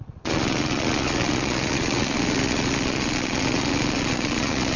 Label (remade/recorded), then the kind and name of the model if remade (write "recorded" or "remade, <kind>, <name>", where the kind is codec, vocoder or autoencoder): remade, vocoder, Vocos